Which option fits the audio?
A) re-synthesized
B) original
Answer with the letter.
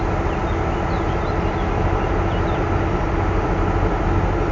B